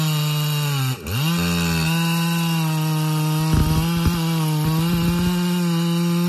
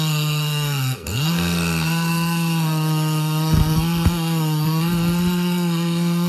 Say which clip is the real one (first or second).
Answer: first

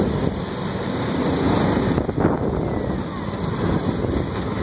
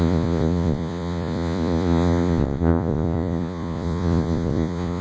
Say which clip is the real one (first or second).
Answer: first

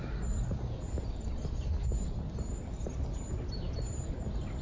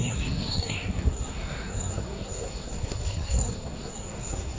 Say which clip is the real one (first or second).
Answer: first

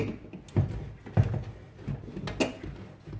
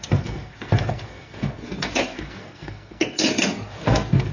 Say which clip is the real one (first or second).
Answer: first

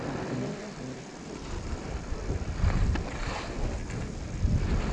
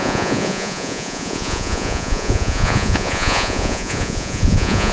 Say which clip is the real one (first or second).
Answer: first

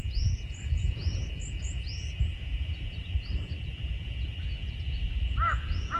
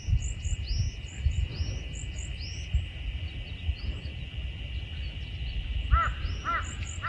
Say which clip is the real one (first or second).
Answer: second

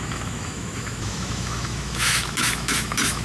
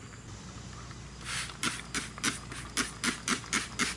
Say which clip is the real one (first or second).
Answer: second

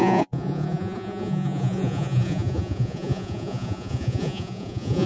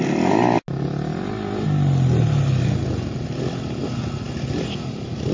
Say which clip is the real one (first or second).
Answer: second